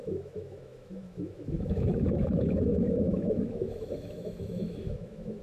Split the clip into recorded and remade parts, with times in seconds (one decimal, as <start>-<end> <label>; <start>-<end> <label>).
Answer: 0.0-5.4 remade